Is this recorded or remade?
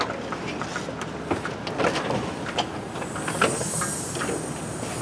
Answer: recorded